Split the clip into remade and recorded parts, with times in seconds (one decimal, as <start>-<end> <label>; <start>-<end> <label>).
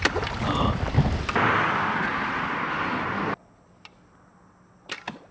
0.0-5.3 recorded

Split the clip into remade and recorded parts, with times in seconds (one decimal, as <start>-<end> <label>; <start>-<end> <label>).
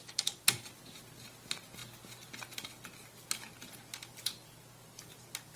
0.0-5.6 recorded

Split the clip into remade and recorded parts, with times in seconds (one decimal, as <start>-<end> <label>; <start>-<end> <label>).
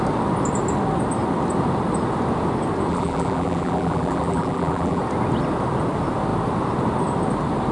0.0-2.9 recorded; 2.9-5.0 remade; 5.0-7.7 recorded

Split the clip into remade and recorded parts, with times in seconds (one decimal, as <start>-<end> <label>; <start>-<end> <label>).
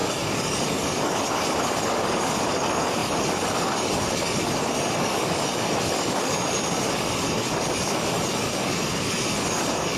0.0-10.0 remade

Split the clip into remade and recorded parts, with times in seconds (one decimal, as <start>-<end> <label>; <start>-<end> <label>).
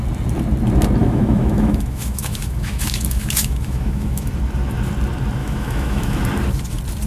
0.0-1.0 recorded; 1.0-4.3 remade; 4.3-5.4 recorded; 5.4-6.2 remade; 6.2-7.1 recorded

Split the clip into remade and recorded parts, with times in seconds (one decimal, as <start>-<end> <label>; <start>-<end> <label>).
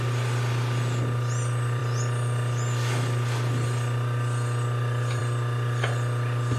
0.0-6.6 recorded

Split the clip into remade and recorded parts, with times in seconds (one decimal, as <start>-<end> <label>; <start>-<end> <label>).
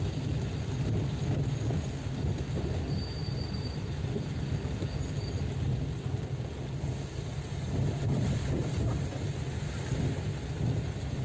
0.0-3.2 recorded; 3.2-4.4 remade; 4.4-11.2 recorded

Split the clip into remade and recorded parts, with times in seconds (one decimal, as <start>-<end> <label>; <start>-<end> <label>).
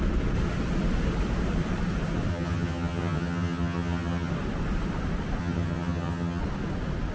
0.0-2.3 recorded; 2.3-4.3 remade; 4.3-5.4 recorded; 5.4-6.4 remade; 6.4-7.1 recorded